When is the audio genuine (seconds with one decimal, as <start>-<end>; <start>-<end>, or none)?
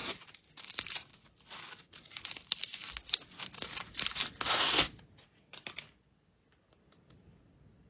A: 0.0-7.9